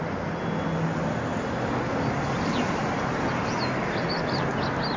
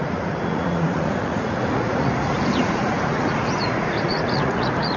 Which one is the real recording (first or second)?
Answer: first